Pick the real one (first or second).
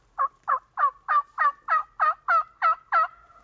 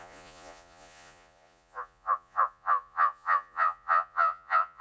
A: first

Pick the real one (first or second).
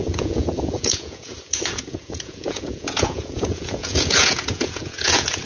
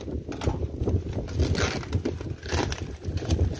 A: second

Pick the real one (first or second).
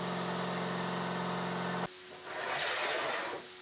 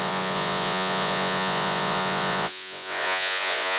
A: first